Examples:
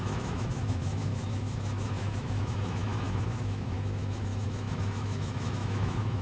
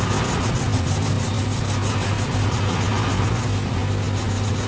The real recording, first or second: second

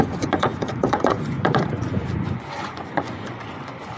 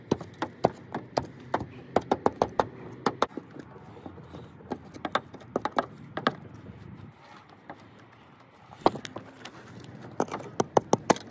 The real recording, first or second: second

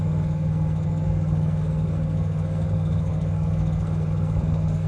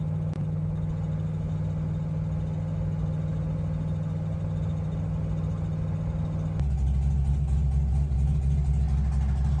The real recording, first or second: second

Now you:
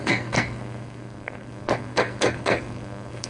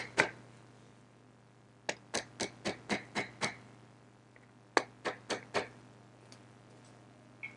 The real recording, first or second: second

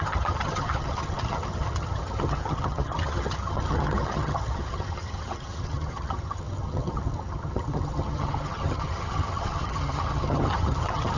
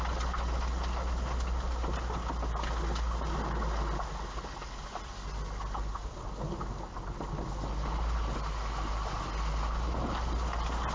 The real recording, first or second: second